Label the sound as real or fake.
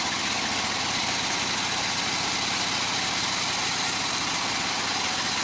real